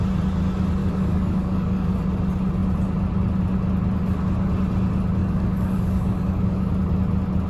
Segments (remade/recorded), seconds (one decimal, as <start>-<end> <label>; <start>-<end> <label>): 0.0-0.8 recorded; 0.8-1.9 remade; 1.9-5.2 recorded; 5.2-6.7 remade; 6.7-7.5 recorded